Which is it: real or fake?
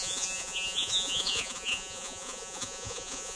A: fake